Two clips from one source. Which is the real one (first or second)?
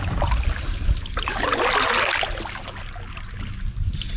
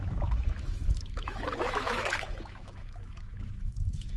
first